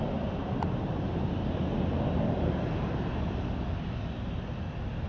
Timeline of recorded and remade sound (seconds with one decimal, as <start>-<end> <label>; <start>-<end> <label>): 0.0-0.4 recorded; 0.4-3.5 remade; 3.5-5.1 recorded